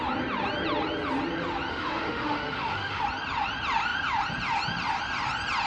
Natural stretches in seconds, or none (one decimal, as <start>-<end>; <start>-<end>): 0.0-1.7; 3.0-5.7